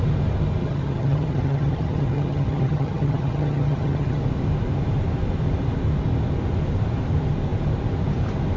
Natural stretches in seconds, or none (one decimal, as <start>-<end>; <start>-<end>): 0.0-0.6; 4.2-8.6